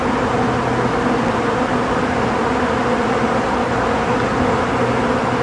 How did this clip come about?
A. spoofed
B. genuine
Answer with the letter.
B